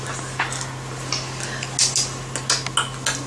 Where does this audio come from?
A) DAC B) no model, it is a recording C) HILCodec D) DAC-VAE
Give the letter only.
B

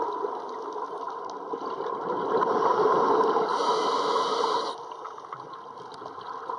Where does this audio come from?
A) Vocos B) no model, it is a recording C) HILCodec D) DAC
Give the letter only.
B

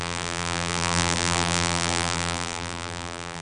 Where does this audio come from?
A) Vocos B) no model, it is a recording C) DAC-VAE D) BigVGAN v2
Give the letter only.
D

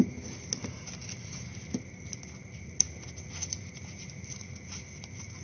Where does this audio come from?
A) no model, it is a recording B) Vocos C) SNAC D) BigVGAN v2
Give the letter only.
A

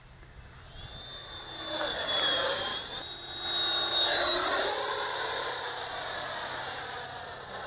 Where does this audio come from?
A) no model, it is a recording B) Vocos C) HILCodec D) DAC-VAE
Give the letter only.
A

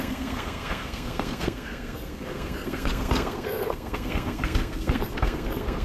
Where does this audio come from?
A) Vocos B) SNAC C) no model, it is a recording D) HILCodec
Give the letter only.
B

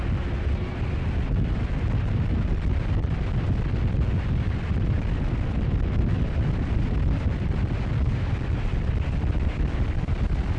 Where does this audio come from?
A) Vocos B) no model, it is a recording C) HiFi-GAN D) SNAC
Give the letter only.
B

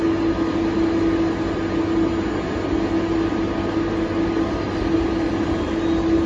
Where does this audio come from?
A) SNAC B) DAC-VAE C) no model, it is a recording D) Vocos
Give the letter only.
C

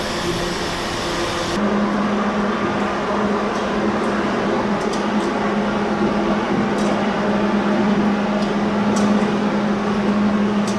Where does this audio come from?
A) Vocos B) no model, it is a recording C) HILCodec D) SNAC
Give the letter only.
B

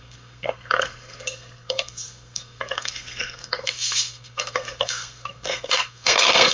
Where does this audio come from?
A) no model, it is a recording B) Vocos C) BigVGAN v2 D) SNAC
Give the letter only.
D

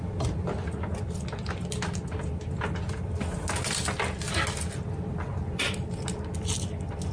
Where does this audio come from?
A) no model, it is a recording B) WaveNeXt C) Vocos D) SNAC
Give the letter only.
A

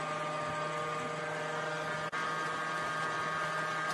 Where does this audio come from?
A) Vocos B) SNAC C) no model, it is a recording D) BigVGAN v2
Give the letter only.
C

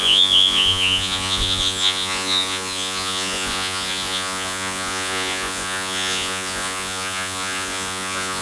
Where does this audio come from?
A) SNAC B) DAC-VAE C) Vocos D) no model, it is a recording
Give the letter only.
C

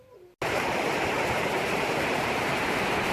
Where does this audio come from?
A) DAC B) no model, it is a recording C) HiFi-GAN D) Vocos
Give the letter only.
B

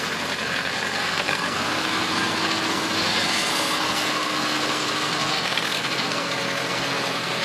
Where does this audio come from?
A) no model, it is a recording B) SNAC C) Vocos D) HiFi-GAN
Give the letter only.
B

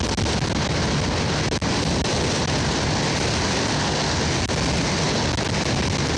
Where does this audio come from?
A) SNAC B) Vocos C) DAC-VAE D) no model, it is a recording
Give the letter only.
D